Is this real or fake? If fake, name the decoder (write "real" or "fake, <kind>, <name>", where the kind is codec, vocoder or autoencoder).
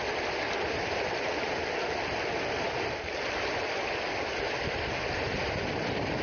real